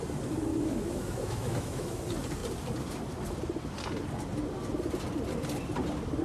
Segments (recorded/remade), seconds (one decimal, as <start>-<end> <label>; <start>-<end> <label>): 0.0-0.5 recorded; 0.5-2.0 remade; 2.0-6.2 recorded

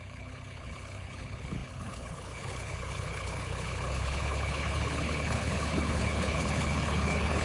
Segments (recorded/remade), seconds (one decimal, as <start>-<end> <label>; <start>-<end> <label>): 0.0-7.4 remade

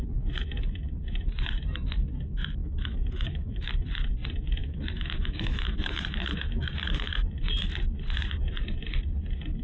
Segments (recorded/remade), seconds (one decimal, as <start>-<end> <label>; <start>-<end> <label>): 0.0-2.6 recorded; 2.6-3.7 remade; 3.7-4.6 recorded; 4.6-7.1 remade; 7.1-9.6 recorded

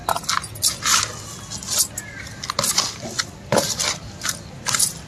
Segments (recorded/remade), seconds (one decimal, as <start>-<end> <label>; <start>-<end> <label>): 0.0-2.7 recorded; 2.7-5.1 remade

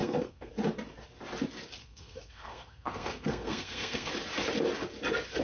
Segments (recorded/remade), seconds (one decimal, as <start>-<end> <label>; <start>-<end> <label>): 0.0-0.5 remade; 0.5-1.8 recorded; 1.8-4.1 remade; 4.1-5.4 recorded